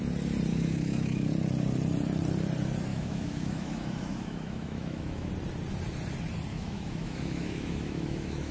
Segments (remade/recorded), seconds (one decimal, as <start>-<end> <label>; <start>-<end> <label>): 0.0-0.5 recorded; 0.5-1.3 remade; 1.3-2.9 recorded; 2.9-5.3 remade; 5.3-6.5 recorded; 6.5-8.5 remade